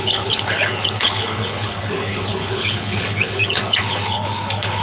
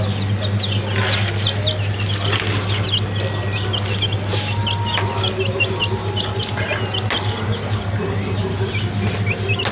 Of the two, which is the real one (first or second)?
second